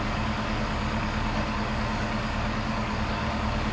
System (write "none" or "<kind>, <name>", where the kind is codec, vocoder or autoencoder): codec, DAC